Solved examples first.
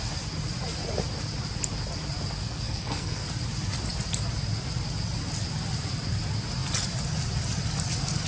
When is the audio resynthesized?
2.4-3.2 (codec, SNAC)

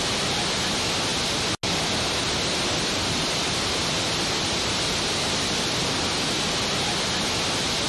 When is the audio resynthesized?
none